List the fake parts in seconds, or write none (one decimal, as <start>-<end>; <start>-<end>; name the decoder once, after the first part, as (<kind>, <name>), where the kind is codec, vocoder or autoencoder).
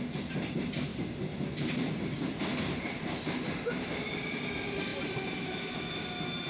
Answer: 4.9-5.8 (vocoder, BigVGAN v2)